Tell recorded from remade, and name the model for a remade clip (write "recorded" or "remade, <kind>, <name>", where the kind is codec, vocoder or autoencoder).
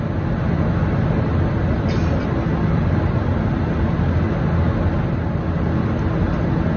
recorded